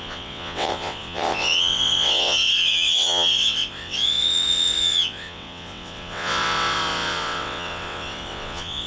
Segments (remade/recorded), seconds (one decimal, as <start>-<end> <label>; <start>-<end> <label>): 0.0-8.9 remade